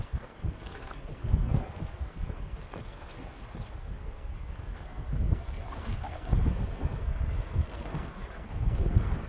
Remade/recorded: remade